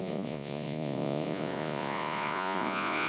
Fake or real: fake